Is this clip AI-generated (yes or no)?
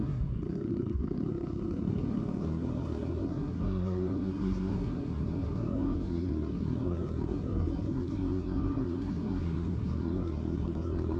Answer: yes